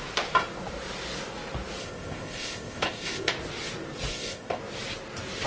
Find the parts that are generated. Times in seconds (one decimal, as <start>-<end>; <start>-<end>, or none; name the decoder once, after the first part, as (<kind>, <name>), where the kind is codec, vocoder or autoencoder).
1.8-3.3 (codec, ZipCodec); 4.1-4.6